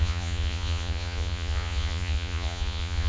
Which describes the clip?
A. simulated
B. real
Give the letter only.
A